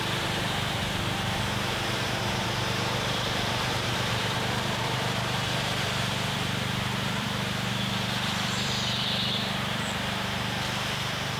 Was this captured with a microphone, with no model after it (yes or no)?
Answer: no